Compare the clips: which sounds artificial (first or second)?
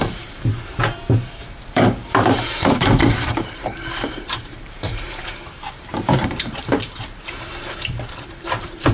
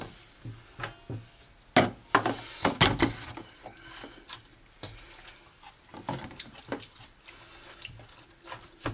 first